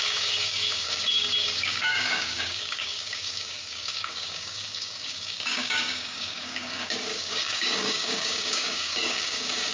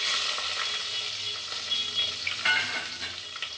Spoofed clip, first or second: first